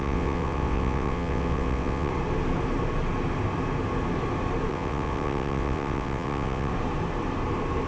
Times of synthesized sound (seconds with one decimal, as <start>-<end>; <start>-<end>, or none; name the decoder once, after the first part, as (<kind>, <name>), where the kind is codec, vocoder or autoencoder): 0.0-2.1 (vocoder, WaveNeXt); 4.7-6.7